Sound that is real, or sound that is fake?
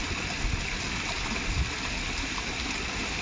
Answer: real